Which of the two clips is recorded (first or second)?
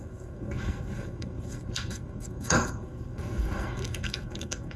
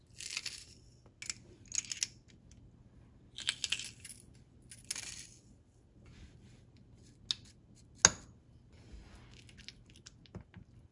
second